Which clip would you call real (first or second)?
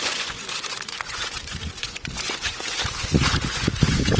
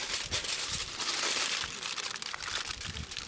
second